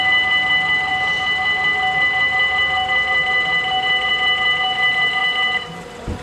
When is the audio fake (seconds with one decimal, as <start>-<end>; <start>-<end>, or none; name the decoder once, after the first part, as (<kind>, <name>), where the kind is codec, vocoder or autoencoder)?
none